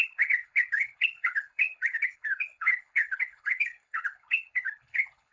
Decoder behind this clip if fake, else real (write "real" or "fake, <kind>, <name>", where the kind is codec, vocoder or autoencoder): fake, codec, HILCodec